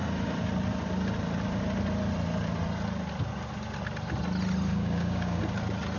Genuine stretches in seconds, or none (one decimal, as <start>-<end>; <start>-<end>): 0.0-4.7; 5.4-6.0